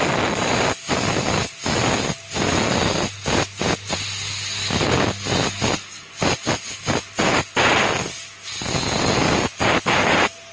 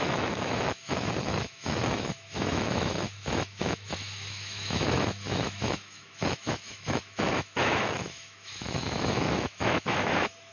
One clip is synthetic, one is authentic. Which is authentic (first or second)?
first